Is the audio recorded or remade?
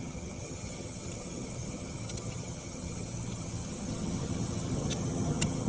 remade